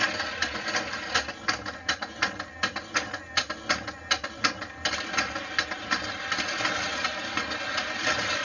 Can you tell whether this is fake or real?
real